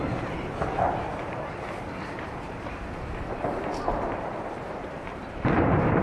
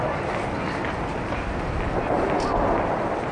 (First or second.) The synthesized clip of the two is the first